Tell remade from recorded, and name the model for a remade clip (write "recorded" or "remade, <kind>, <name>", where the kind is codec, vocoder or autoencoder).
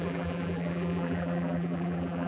remade, vocoder, BigVGAN v2